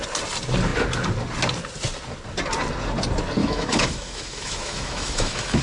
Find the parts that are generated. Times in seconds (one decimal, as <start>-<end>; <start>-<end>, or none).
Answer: 3.4-5.6